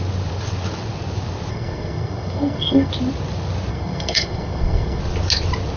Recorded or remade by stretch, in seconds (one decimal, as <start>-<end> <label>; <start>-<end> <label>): 0.0-1.5 recorded; 1.5-2.9 remade; 2.9-3.7 recorded; 3.7-5.0 remade; 5.0-5.8 recorded

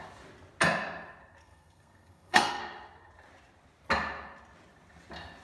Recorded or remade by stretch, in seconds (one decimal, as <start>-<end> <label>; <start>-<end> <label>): 0.0-1.4 recorded; 1.4-2.6 remade; 2.6-5.4 recorded

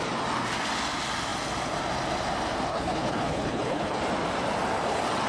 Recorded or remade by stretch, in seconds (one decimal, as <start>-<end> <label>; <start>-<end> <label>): 0.0-2.7 recorded; 2.7-4.0 remade; 4.0-5.3 recorded

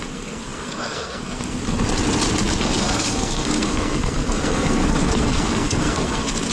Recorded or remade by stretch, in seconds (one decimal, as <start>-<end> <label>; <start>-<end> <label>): 0.0-1.6 remade; 1.6-2.6 recorded; 2.6-6.5 remade

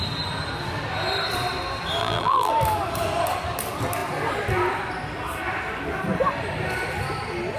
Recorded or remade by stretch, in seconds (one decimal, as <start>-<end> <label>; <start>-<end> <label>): 0.0-2.0 recorded; 2.0-2.5 remade; 2.5-7.6 recorded

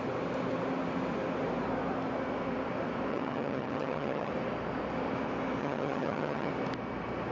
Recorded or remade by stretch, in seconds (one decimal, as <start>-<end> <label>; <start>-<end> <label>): 0.0-3.1 recorded; 3.1-4.3 remade; 4.3-5.6 recorded; 5.6-6.5 remade; 6.5-7.3 recorded